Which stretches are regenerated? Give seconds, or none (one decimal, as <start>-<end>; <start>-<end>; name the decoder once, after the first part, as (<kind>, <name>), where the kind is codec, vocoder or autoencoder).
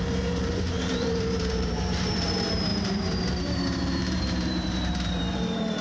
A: 0.0-5.8 (vocoder, BigVGAN v2)